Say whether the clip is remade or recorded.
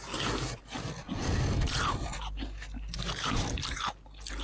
recorded